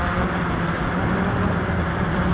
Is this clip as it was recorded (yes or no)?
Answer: yes